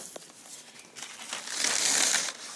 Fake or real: real